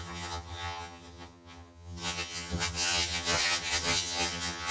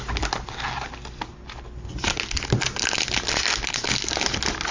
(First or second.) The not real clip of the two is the first